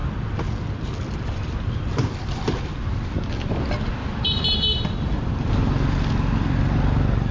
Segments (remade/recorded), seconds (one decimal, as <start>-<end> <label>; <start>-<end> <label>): 0.0-2.7 remade; 2.7-4.0 recorded; 4.0-5.5 remade; 5.5-7.3 recorded